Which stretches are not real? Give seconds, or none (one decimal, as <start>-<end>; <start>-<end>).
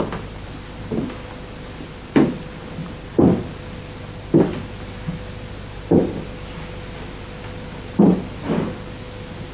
none